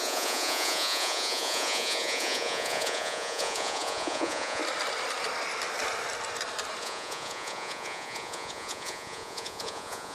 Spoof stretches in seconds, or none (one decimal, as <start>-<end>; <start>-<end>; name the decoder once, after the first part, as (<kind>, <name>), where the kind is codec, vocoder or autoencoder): 0.0-4.6 (vocoder, Vocos); 6.8-10.1